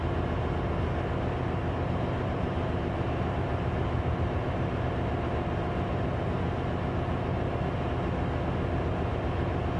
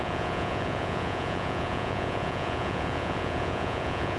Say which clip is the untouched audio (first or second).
first